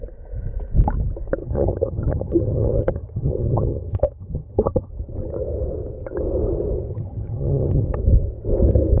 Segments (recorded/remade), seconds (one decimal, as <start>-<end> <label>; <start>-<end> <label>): 0.0-1.4 recorded; 1.4-4.9 remade; 4.9-6.9 recorded; 6.9-8.0 remade; 8.0-9.0 recorded